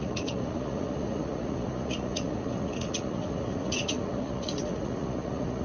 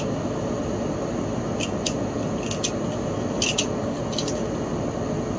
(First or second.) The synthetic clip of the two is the first